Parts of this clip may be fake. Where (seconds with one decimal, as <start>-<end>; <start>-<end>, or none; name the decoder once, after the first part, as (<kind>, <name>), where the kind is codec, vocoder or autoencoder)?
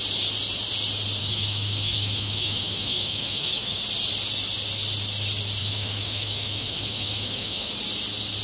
1.2-3.8 (autoencoder, DAC-VAE); 5.6-7.7